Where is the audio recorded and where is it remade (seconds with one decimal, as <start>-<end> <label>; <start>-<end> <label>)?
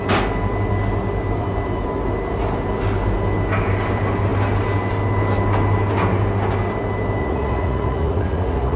0.0-7.2 recorded; 7.2-8.8 remade